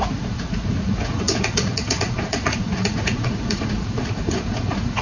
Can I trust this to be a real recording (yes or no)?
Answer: no